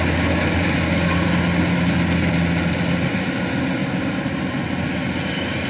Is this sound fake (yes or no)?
no